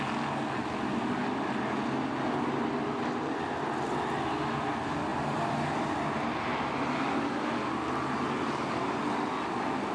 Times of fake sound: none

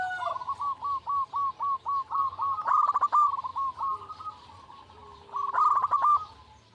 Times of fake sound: none